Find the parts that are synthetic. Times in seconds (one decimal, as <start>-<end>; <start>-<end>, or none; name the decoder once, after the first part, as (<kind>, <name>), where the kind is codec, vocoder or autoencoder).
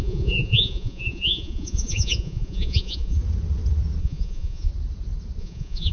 0.0-3.2 (vocoder, Vocos); 4.0-4.7; 5.4-5.9